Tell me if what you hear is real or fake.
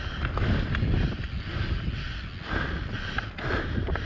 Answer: real